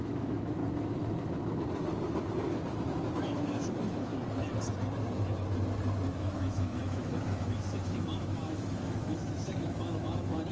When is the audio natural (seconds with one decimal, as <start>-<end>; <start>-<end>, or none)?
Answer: 0.6-3.2; 4.1-6.1